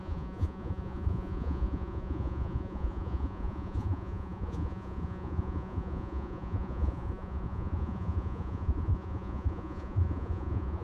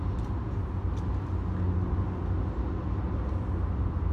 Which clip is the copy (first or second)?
first